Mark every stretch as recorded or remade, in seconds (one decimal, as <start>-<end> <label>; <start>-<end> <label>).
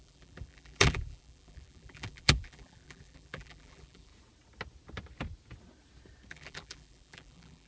0.0-4.1 remade; 4.1-6.3 recorded; 6.3-7.7 remade